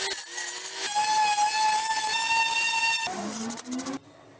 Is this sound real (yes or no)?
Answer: yes